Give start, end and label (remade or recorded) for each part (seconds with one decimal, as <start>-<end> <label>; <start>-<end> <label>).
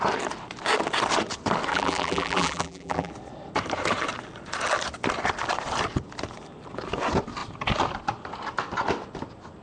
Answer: 0.0-1.7 recorded; 1.7-3.1 remade; 3.1-9.6 recorded